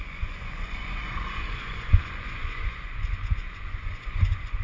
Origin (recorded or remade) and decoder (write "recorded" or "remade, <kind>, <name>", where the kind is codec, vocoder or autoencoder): remade, vocoder, Vocos